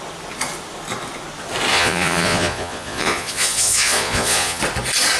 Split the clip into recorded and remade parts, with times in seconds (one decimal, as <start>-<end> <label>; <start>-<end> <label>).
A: 0.0-1.7 recorded; 1.7-4.6 remade; 4.6-5.2 recorded